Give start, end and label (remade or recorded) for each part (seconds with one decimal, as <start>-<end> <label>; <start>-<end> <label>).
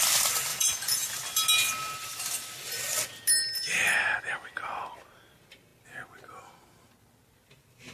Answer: 0.0-0.5 recorded; 0.5-1.1 remade; 1.1-7.9 recorded